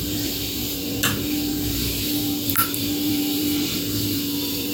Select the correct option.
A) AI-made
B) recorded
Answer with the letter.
A